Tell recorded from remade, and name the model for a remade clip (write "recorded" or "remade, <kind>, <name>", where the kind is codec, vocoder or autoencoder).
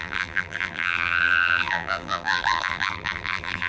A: remade, vocoder, BigVGAN v2